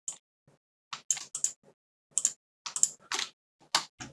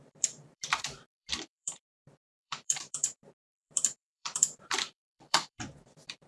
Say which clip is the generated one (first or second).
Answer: second